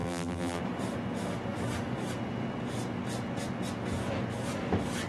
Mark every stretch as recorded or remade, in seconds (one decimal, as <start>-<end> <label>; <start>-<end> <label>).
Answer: 0.0-0.6 remade; 0.6-5.1 recorded